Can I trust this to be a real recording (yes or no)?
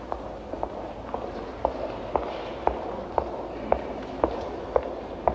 no